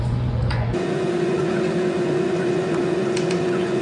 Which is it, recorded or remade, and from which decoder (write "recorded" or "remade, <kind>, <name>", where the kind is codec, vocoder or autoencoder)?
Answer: remade, vocoder, Vocos